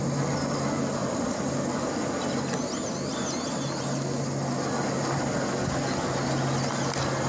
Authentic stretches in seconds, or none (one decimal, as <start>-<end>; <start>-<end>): 0.0-7.3

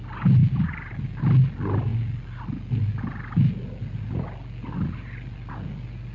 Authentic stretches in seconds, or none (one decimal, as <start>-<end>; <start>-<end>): 0.0-6.1

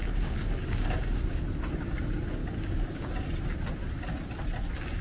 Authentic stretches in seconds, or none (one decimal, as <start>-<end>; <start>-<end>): 1.4-2.4; 3.1-5.0

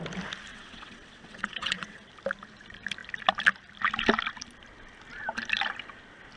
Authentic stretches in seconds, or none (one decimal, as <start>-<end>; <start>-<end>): 0.0-0.5; 2.1-6.4

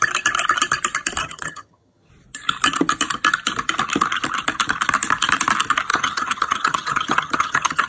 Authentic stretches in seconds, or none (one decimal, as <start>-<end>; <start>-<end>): 0.0-1.2; 2.1-5.9

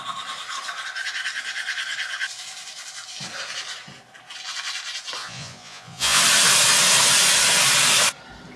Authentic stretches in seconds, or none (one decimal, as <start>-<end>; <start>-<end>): 0.0-5.2; 6.2-8.6

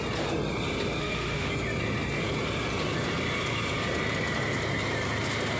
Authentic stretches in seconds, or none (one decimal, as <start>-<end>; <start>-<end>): 0.0-1.0; 1.5-5.6

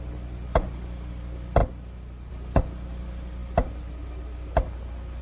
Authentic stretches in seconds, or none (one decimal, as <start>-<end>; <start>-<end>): 0.0-5.2